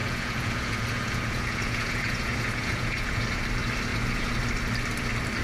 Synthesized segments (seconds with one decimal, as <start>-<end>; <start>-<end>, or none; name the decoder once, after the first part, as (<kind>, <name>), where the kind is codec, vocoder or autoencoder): 0.0-3.2 (vocoder, Vocos); 3.9-4.4